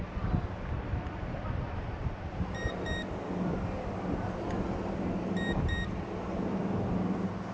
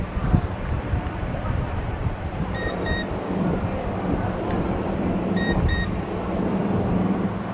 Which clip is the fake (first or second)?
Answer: second